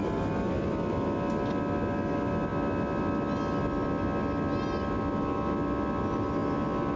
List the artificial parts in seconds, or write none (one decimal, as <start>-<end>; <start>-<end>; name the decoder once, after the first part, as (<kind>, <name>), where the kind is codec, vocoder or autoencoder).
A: none